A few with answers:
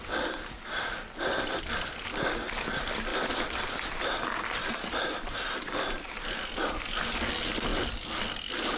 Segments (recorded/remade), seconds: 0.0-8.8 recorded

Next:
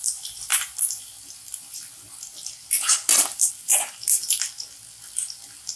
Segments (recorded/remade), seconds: 0.0-5.8 recorded

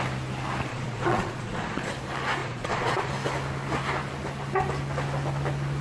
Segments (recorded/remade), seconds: 0.0-0.7 recorded; 0.7-1.9 remade; 1.9-2.4 recorded; 2.4-3.1 remade; 3.1-5.8 recorded

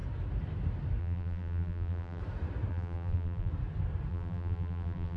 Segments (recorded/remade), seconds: 0.0-1.0 recorded; 1.0-2.2 remade; 2.2-2.7 recorded; 2.7-3.5 remade; 3.5-4.1 recorded; 4.1-5.2 remade

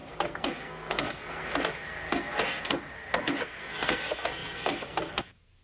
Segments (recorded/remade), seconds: 0.0-5.6 remade

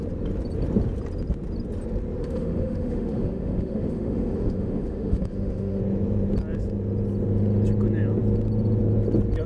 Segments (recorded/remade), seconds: 0.0-2.2 recorded; 2.2-5.8 remade; 5.8-9.5 recorded

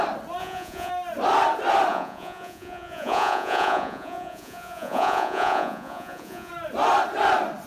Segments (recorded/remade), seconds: 0.0-0.4 recorded; 0.4-0.9 remade; 0.9-1.9 recorded; 1.9-6.5 remade; 6.5-7.7 recorded